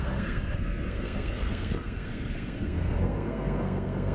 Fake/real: fake